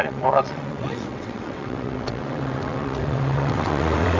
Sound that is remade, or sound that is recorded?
remade